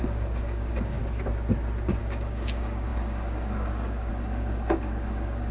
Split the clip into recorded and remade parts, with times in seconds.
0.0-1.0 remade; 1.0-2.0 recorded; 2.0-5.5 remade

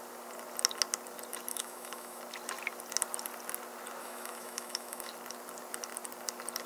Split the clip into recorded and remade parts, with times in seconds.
0.0-1.5 recorded; 1.5-2.2 remade; 2.2-4.0 recorded; 4.0-5.1 remade; 5.1-6.7 recorded

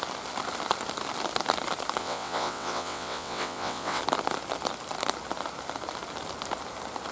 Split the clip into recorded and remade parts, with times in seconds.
0.0-2.0 recorded; 2.0-4.0 remade; 4.0-7.1 recorded

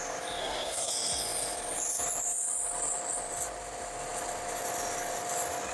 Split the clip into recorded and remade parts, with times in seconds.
0.0-0.4 recorded; 0.4-0.9 remade; 0.9-5.7 recorded